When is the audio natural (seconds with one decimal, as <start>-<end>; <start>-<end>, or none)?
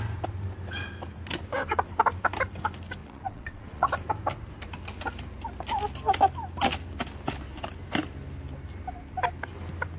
0.0-3.0; 3.9-10.0